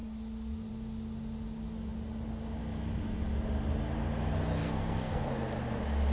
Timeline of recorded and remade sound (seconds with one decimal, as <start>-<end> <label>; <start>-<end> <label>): 0.0-4.6 recorded; 4.6-5.3 remade; 5.3-6.1 recorded